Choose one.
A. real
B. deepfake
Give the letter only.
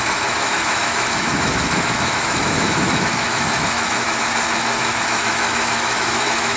B